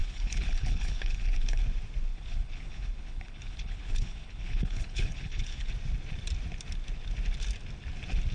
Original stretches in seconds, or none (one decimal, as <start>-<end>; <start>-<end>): 1.6-2.1; 5.7-8.3